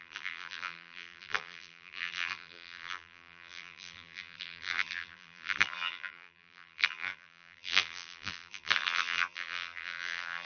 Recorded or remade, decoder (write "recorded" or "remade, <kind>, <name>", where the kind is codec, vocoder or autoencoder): remade, vocoder, BigVGAN v2